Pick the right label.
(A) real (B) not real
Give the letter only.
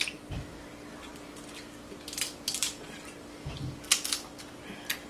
A